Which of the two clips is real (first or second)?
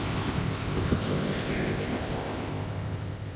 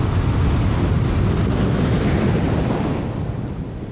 second